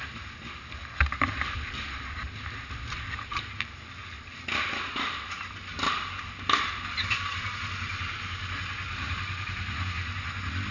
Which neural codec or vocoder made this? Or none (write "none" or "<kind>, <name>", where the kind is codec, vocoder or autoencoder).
none